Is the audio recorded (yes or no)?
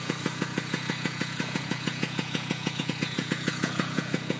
no